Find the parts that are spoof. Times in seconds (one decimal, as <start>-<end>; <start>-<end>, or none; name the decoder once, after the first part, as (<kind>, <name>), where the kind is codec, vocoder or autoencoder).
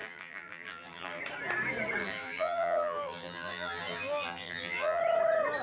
0.0-1.2 (vocoder, BigVGAN v2); 2.0-5.0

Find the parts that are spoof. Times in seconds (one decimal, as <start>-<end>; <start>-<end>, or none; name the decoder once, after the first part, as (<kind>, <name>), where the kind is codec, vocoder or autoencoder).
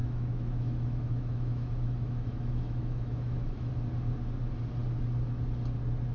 0.0-3.7 (autoencoder, DAC-VAE)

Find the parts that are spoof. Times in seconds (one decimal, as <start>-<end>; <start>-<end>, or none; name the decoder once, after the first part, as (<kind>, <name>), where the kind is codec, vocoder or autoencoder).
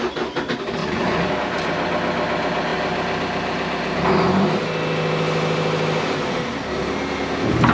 0.8-1.3 (vocoder, Vocos)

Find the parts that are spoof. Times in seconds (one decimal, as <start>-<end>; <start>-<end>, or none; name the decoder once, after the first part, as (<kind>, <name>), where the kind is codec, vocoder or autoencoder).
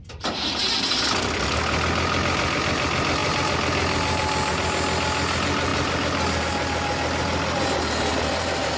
8.1-8.8 (vocoder, BigVGAN v2)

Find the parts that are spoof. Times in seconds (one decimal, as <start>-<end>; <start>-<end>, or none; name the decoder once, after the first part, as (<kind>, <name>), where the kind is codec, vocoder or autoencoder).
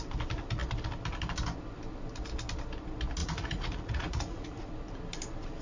3.2-4.6 (vocoder, Vocos)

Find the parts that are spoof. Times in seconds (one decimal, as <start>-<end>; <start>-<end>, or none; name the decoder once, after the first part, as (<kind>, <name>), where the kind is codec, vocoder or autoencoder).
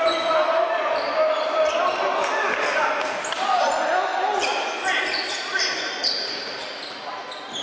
none